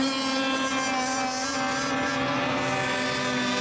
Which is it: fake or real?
real